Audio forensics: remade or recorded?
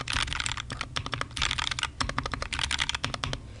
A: recorded